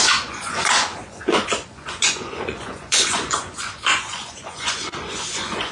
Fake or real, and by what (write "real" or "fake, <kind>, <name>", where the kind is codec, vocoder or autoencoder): fake, vocoder, Vocos